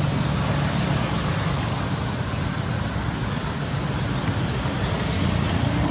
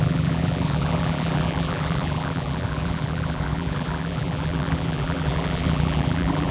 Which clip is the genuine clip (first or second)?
first